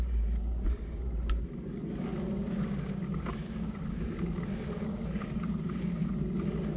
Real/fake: real